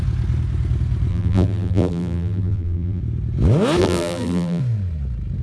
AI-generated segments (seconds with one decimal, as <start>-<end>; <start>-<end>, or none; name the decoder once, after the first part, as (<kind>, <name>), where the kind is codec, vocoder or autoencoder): 1.1-3.0 (vocoder, BigVGAN v2); 3.8-4.6